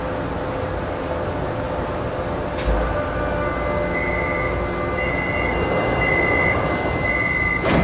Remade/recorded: recorded